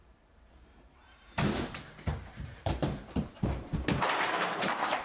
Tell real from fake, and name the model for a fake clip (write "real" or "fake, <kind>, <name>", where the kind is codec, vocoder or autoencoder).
fake, vocoder, BigVGAN v2